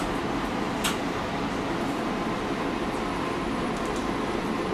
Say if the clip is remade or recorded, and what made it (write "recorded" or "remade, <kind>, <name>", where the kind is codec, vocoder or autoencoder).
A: recorded